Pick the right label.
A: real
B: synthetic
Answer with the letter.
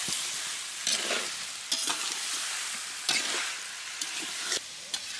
A